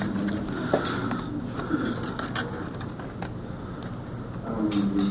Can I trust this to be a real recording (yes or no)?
yes